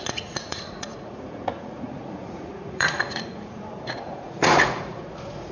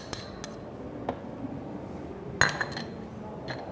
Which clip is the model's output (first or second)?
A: first